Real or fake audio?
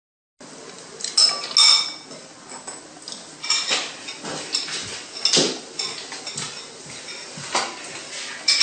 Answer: real